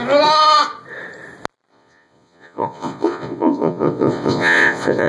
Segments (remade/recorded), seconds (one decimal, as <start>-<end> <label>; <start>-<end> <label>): 0.0-1.7 recorded; 1.7-5.1 remade